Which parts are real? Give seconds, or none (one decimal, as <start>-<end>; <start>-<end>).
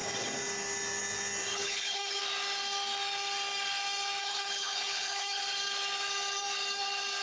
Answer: 0.0-1.5; 2.2-4.2; 5.4-7.2